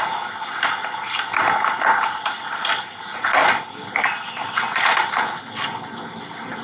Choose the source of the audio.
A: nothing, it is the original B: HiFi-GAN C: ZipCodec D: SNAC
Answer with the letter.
A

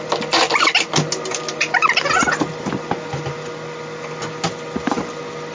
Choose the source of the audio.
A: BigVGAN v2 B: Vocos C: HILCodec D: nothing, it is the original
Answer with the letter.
D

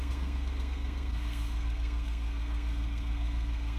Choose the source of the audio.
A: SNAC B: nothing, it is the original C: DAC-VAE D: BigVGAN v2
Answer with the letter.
A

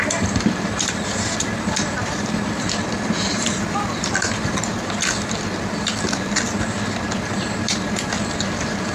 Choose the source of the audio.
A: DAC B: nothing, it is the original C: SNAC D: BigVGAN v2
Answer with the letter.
D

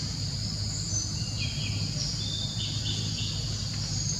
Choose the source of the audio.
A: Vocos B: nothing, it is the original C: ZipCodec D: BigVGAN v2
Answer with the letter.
D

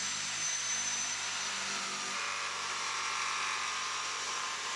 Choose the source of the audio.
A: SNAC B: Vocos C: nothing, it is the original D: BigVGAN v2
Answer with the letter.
D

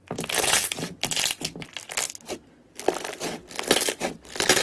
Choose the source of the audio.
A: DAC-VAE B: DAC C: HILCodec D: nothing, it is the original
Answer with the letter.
D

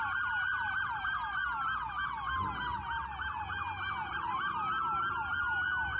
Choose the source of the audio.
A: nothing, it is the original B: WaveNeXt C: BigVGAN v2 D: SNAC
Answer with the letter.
A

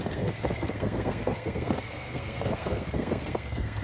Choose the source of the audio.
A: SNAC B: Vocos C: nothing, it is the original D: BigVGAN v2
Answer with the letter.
A